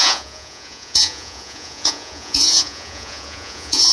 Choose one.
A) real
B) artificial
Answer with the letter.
B